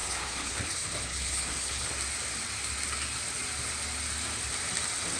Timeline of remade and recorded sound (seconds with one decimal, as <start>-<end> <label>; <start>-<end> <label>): 0.0-1.9 remade; 1.9-5.2 recorded